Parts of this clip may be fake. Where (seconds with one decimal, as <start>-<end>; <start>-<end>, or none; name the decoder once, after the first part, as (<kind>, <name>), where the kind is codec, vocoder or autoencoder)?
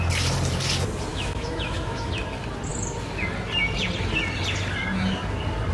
1.1-2.1 (autoencoder, DAC-VAE)